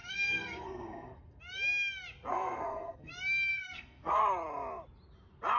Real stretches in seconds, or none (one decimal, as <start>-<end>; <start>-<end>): 1.4-2.3; 3.1-3.5; 4.2-5.6